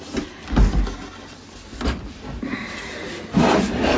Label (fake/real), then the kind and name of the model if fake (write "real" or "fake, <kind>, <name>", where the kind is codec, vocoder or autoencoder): real